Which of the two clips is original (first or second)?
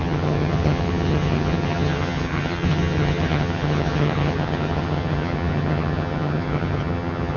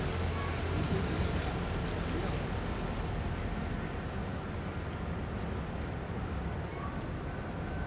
second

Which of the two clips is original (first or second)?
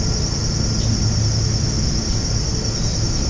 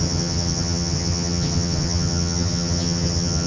first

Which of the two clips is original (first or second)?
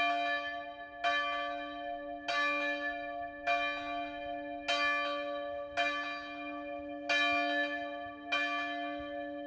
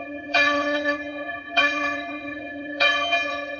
first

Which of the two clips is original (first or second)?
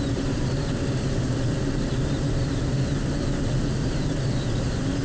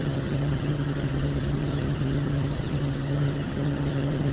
first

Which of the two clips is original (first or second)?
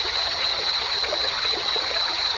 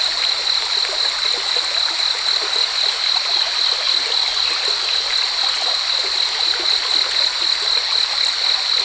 second